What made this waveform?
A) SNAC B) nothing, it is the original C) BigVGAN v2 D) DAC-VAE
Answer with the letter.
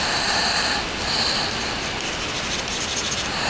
C